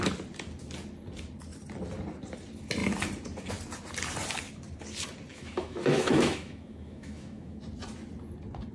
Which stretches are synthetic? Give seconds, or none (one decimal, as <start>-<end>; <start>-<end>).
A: 5.3-7.6